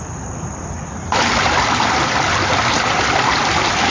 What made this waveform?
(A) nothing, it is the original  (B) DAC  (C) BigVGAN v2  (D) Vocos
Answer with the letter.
A